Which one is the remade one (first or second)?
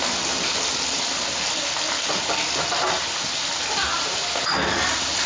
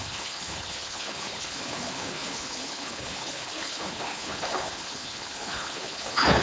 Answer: second